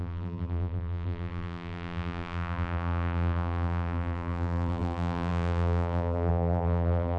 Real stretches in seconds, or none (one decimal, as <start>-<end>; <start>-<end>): none